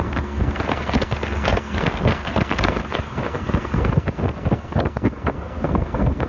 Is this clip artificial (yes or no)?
yes